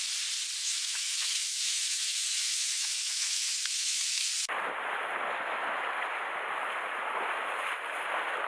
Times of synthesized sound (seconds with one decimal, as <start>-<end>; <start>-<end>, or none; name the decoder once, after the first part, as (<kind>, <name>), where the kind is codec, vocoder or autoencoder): 0.6-4.3 (autoencoder, DAC-VAE)